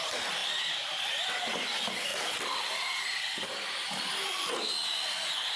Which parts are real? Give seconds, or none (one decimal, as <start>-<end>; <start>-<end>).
0.0-5.6